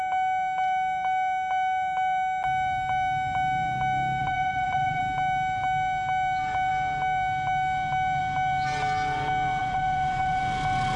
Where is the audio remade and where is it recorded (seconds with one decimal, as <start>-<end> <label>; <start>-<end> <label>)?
0.0-4.2 recorded; 4.2-5.0 remade; 5.0-9.6 recorded; 9.6-10.4 remade; 10.4-11.0 recorded